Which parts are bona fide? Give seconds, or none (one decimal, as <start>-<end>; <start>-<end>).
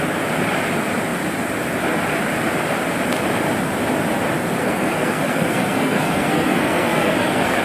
0.0-4.6